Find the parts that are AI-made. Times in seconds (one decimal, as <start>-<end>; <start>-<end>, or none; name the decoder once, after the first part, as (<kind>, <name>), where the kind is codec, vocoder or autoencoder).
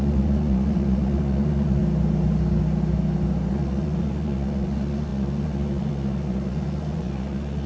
0.0-1.8 (vocoder, Vocos); 3.5-7.7